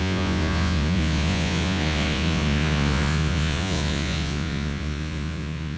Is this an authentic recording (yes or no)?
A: no